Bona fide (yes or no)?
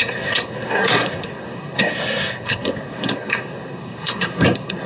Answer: no